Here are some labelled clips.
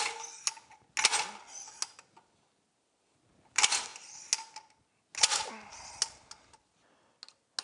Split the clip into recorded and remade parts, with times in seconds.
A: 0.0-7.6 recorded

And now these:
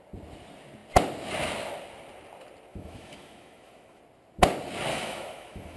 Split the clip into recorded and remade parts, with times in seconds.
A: 0.0-2.7 recorded; 2.7-4.0 remade; 4.0-4.9 recorded; 4.9-5.8 remade

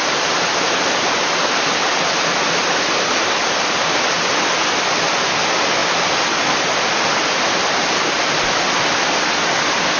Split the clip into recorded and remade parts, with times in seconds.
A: 0.0-10.0 recorded

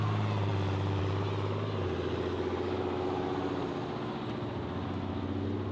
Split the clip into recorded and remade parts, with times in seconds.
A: 0.0-5.7 recorded

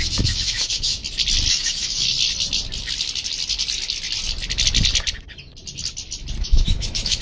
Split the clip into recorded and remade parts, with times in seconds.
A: 0.0-1.0 remade; 1.0-1.5 recorded; 1.5-2.1 remade; 2.1-6.4 recorded; 6.4-7.2 remade

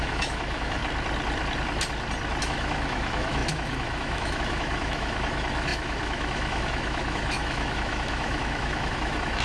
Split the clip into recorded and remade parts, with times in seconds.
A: 0.0-0.8 remade; 0.8-2.4 recorded; 2.4-9.4 remade